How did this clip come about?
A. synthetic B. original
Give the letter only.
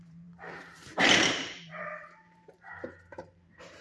A